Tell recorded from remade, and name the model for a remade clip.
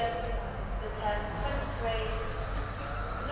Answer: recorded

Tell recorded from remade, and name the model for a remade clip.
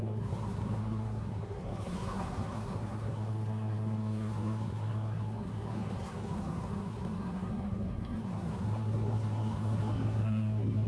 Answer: remade, codec, SNAC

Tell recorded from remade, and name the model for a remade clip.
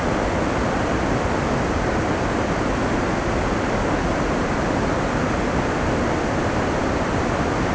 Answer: recorded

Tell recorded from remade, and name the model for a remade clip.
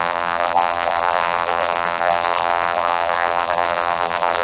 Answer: remade, vocoder, BigVGAN v2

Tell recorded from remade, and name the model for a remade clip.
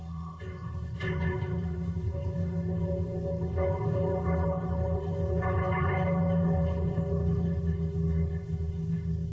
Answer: remade, codec, HILCodec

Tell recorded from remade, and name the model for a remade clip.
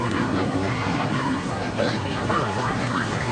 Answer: remade, codec, SNAC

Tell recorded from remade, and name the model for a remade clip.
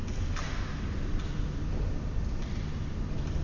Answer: recorded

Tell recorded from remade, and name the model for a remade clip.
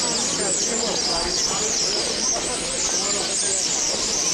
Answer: recorded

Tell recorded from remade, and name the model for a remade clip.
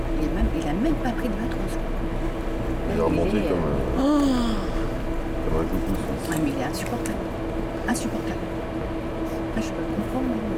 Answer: recorded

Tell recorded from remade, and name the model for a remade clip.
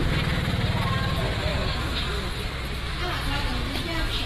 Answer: recorded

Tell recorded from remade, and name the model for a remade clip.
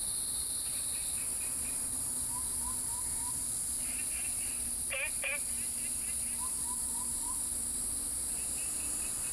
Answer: recorded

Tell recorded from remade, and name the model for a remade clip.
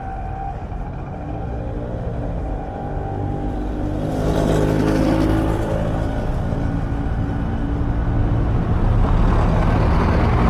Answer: recorded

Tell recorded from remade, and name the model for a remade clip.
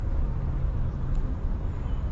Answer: remade, vocoder, BigVGAN v2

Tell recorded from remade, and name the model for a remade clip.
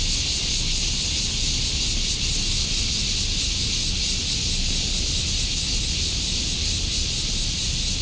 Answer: recorded